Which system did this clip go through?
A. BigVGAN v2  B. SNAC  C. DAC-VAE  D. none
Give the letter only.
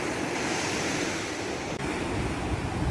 D